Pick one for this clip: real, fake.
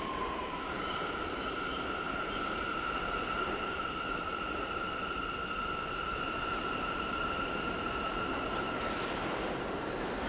fake